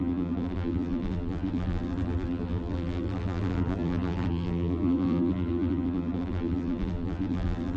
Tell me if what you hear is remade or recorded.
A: remade